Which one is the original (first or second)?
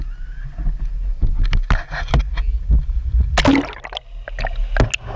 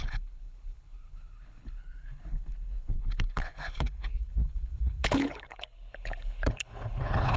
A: first